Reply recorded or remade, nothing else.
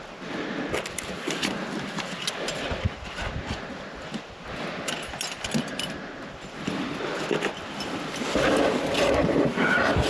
recorded